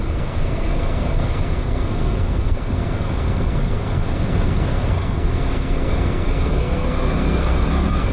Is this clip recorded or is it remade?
remade